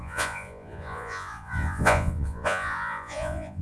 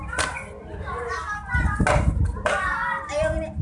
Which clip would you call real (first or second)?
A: second